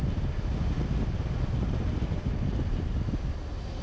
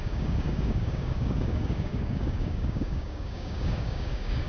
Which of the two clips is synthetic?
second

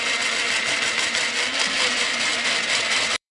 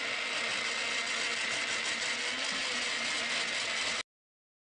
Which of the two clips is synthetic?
first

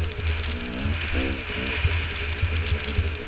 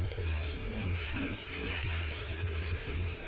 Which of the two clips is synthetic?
second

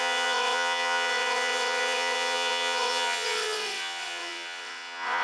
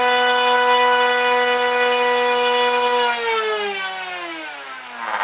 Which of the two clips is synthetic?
first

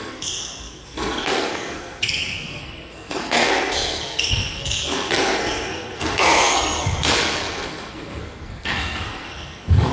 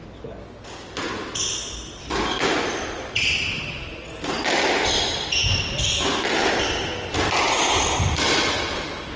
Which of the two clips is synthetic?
first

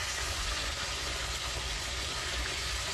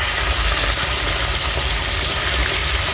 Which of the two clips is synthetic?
first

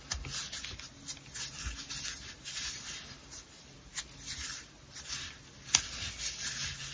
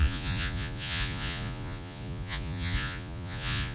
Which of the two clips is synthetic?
second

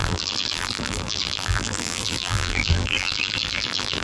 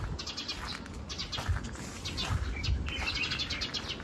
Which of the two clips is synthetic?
first